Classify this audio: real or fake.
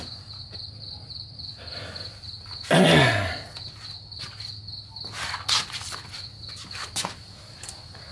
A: real